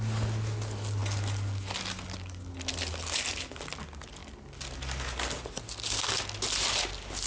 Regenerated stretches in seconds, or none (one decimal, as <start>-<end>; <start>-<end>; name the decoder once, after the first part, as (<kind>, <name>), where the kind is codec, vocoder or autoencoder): none